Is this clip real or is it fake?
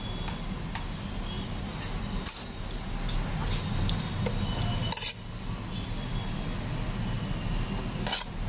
real